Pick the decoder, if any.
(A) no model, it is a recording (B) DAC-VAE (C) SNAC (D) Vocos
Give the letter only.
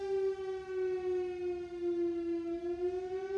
A